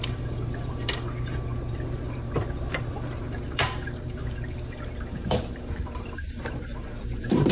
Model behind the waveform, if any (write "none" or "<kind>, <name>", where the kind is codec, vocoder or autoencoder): vocoder, BigVGAN v2